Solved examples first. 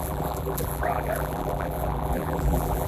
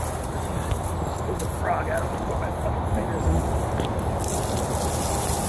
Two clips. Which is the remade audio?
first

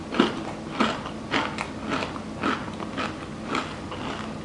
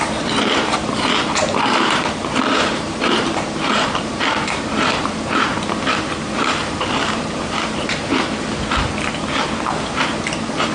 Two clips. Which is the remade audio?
second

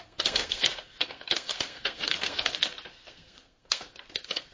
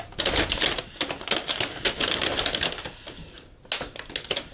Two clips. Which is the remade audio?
first